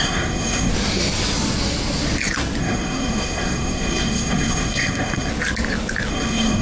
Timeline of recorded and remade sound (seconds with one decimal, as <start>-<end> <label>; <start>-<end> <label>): 0.0-0.7 remade; 0.7-2.6 recorded; 2.6-5.3 remade; 5.3-6.1 recorded; 6.1-6.6 remade